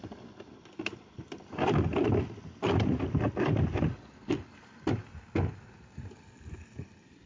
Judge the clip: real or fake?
real